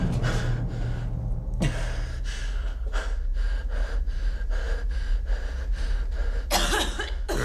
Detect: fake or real real